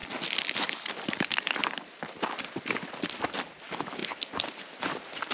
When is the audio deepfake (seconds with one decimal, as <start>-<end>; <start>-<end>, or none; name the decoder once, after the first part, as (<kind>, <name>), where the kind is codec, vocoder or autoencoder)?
none